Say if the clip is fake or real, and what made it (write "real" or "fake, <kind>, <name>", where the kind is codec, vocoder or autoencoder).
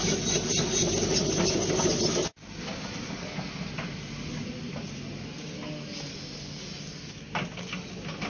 real